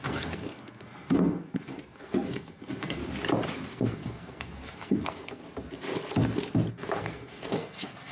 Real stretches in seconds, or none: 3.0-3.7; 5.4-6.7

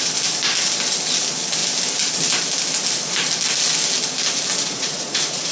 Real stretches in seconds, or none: 0.0-4.6

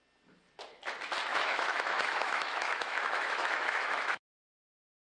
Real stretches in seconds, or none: 0.0-1.3; 4.4-5.1

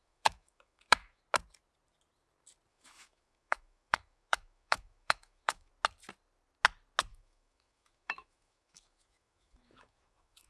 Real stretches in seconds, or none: 1.2-2.7; 5.7-7.1

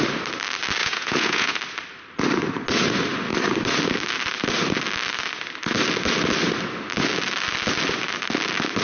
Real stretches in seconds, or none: 0.0-0.8; 1.6-8.8

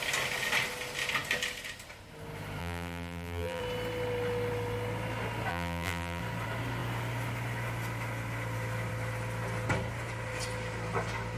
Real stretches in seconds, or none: 0.0-2.6; 3.6-5.5; 6.2-11.4

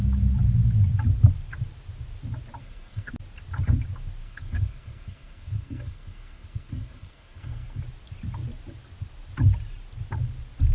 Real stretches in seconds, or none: 0.0-2.6; 3.1-4.2; 7.8-10.7

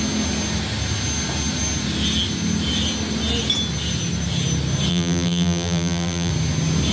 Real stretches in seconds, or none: 0.0-4.9; 6.3-6.9